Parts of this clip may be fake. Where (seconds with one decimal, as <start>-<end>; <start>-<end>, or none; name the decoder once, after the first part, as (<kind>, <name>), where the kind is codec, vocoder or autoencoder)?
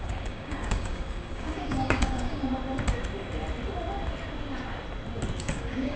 0.0-2.4 (codec, DAC); 5.4-6.0